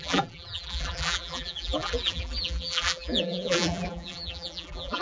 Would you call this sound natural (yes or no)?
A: no